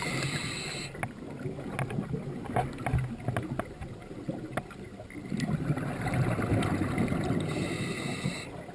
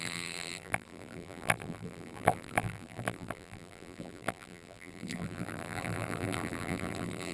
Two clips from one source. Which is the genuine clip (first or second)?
first